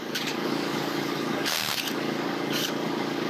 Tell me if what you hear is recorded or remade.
remade